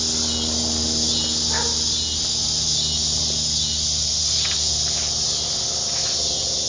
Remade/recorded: recorded